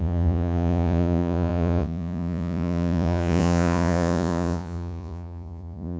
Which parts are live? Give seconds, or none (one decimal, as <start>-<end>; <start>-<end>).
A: none